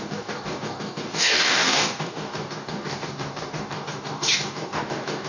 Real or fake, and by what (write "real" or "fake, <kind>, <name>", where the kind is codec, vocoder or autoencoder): fake, codec, DAC